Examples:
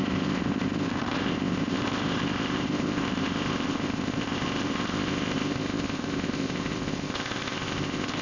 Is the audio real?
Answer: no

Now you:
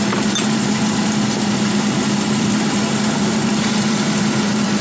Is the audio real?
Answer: no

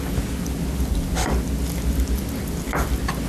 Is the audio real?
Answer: yes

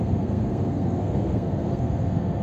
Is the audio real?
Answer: no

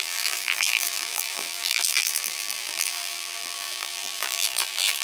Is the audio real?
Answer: no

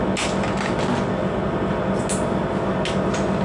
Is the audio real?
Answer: yes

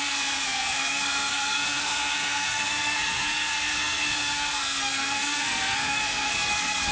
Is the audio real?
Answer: no